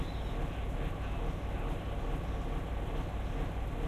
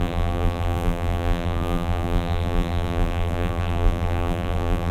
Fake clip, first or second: second